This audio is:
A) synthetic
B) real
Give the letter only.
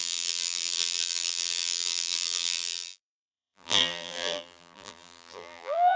A